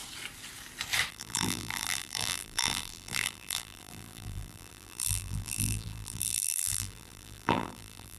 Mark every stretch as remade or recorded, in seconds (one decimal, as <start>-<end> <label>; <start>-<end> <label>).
0.0-1.1 recorded; 1.1-8.2 remade